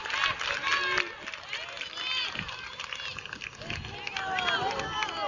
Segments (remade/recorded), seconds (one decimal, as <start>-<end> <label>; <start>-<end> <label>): 0.0-5.3 recorded